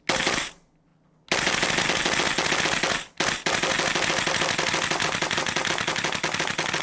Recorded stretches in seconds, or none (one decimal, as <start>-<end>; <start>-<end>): 0.0-6.8